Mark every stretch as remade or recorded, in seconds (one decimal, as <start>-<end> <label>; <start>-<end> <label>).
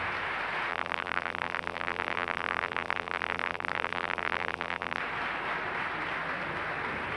0.0-0.7 recorded; 0.7-5.0 remade; 5.0-7.2 recorded